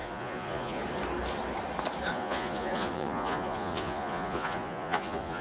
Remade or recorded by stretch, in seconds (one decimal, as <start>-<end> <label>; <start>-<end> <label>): 0.0-0.8 remade; 0.8-2.1 recorded; 2.1-5.4 remade